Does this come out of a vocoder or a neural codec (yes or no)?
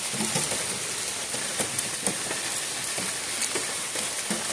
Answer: no